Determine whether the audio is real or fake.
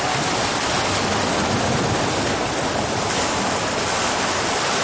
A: real